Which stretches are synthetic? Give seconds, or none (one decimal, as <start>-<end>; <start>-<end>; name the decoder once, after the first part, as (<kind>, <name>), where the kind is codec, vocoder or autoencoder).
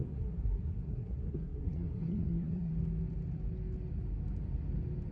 0.0-2.7 (codec, SNAC)